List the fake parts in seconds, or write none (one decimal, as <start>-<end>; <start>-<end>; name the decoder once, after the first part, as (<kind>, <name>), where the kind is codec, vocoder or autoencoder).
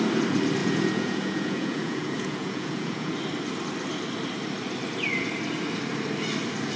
0.6-3.1 (vocoder, Vocos)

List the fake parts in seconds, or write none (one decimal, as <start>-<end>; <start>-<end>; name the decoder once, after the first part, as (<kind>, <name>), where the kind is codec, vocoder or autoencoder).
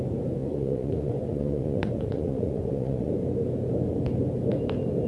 0.4-3.1 (vocoder, Vocos)